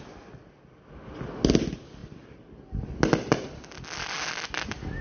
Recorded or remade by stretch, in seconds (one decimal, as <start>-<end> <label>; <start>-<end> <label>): 0.0-5.0 recorded